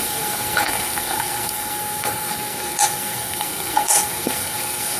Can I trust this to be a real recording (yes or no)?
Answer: no